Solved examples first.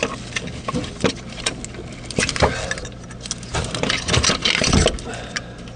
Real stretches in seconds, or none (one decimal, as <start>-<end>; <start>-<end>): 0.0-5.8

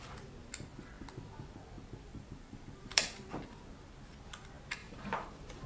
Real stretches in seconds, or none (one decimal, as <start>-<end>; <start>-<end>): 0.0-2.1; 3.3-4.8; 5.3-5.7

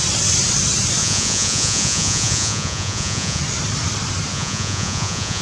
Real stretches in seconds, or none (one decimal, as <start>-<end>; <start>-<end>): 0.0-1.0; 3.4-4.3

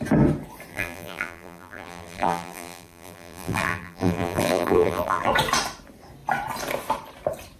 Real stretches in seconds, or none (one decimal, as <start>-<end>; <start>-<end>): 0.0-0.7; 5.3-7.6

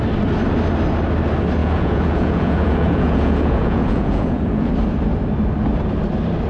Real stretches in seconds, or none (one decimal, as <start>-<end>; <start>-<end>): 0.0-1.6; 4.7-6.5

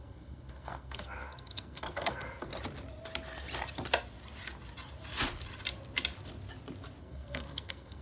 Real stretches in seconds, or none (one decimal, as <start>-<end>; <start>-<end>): 2.5-7.0

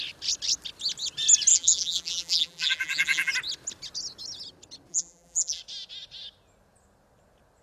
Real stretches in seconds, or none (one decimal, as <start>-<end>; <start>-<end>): 0.0-1.5; 3.3-4.9; 5.6-7.6